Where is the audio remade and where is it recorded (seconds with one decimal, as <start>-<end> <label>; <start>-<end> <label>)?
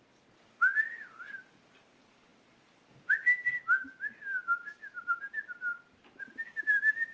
0.0-7.1 recorded